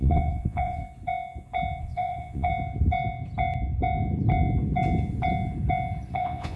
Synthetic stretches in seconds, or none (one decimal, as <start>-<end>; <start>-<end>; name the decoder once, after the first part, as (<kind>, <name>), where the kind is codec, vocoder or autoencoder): 0.0-0.8 (vocoder, Vocos); 1.8-2.5; 6.1-6.6

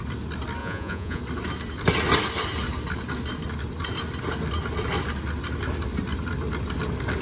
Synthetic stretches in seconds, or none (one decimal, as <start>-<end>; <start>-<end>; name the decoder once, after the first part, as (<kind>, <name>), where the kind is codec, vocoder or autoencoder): 0.6-1.2 (vocoder, Vocos)

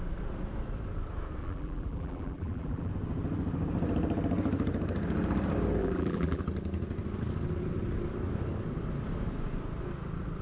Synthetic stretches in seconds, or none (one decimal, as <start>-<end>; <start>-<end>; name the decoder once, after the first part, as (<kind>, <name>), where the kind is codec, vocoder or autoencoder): 1.4-2.9 (vocoder, BigVGAN v2); 5.8-6.4

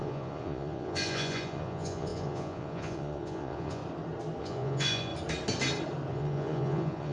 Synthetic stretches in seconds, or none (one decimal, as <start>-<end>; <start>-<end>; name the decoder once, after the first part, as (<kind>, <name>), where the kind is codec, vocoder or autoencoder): 0.0-3.8 (vocoder, Vocos); 4.4-5.1; 6.1-7.1

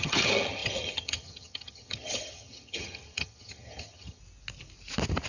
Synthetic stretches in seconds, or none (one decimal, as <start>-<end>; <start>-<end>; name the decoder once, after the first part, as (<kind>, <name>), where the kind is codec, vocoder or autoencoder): 0.0-4.2 (vocoder, HiFi-GAN)

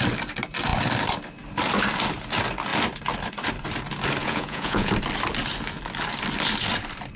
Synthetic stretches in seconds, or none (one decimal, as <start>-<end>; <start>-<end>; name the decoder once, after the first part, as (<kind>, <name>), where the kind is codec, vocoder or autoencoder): 4.2-4.9 (vocoder, Vocos)